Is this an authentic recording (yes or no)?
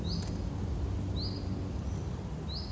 yes